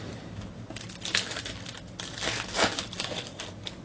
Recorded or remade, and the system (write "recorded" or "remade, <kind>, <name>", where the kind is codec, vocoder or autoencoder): recorded